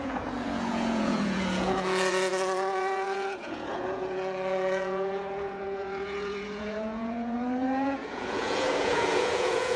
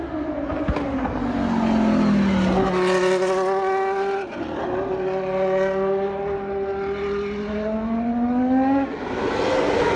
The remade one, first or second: first